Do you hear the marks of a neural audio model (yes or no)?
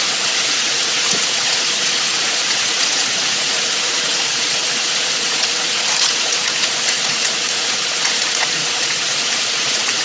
yes